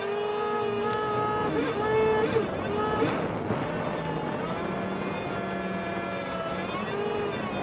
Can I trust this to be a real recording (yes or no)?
yes